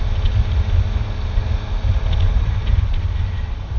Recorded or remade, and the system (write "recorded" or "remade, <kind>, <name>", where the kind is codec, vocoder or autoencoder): recorded